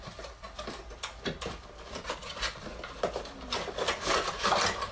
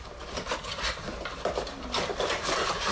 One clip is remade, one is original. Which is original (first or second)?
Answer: first